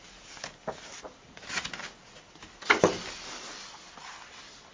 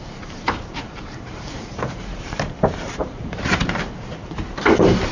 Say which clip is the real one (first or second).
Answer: first